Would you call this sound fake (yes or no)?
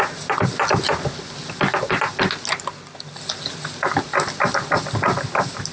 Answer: no